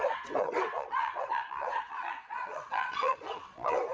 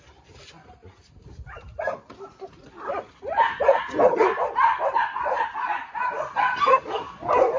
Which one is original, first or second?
second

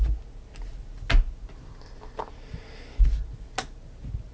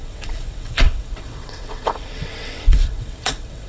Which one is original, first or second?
first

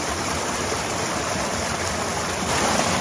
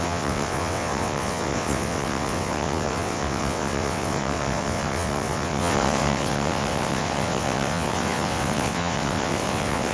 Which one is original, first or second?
first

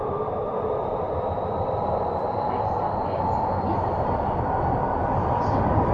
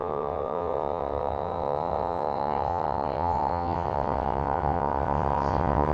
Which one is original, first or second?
first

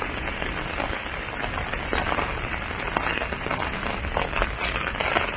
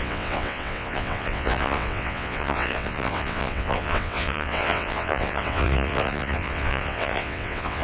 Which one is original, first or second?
first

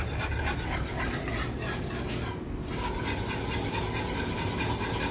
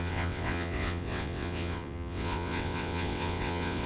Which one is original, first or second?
first